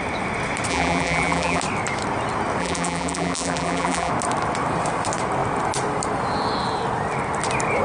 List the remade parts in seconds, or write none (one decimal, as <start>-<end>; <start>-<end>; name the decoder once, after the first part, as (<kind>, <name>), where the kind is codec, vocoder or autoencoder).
0.7-1.6 (vocoder, BigVGAN v2); 2.6-4.1